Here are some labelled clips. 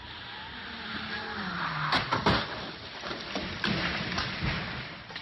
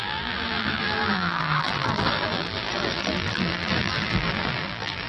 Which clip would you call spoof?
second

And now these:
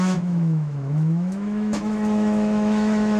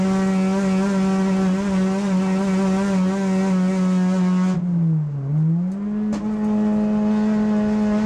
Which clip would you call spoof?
first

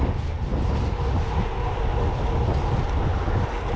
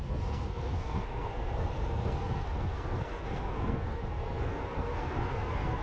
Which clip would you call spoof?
second